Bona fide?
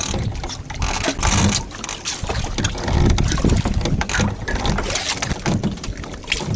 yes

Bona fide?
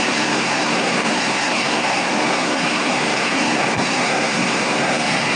no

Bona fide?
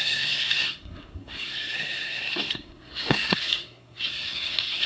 no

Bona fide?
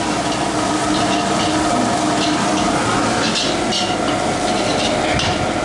yes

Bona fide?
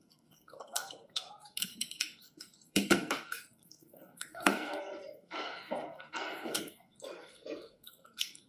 no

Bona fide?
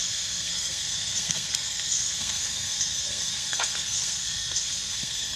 no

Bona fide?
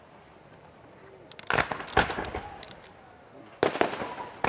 yes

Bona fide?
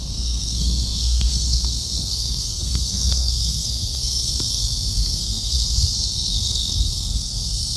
no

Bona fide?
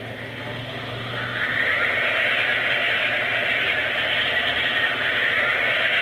yes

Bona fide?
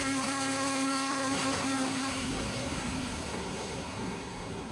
no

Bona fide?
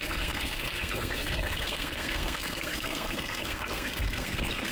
no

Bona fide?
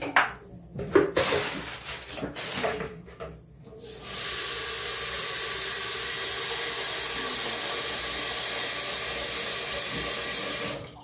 yes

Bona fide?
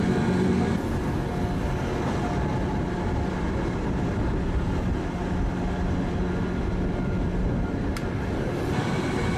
yes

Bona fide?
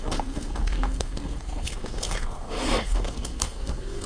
no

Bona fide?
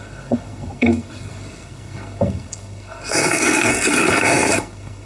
no